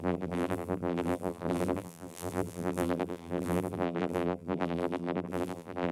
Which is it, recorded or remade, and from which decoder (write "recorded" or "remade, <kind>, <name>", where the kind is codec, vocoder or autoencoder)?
remade, vocoder, BigVGAN v2